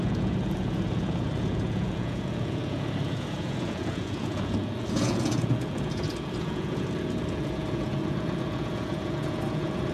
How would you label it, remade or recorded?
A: remade